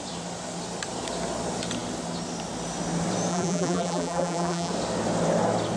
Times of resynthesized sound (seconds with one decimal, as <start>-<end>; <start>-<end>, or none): 3.3-4.7